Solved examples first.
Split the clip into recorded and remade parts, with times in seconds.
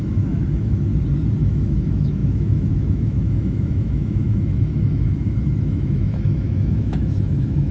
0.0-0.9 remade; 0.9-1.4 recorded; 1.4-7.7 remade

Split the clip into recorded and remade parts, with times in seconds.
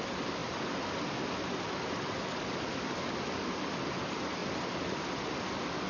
0.0-5.9 recorded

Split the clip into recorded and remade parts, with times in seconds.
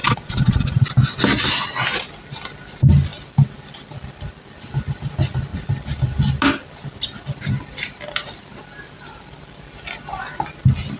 0.0-0.8 remade; 0.8-11.0 recorded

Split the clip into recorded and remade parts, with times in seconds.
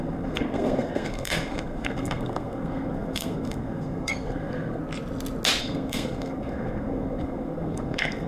0.0-4.8 remade; 4.8-5.6 recorded; 5.6-8.3 remade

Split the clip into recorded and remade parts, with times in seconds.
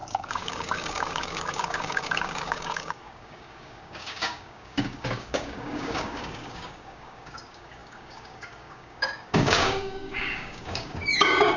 0.0-11.6 remade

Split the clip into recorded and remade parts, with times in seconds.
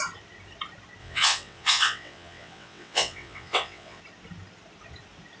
0.0-1.0 recorded; 1.0-4.0 remade; 4.0-5.4 recorded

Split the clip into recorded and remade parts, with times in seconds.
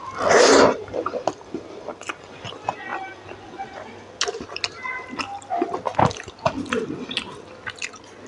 0.0-8.3 recorded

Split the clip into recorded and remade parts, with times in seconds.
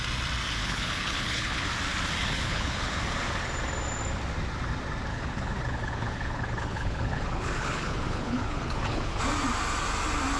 0.0-0.6 recorded; 0.6-1.7 remade; 1.7-2.2 recorded; 2.2-3.0 remade; 3.0-5.1 recorded; 5.1-9.2 remade; 9.2-10.4 recorded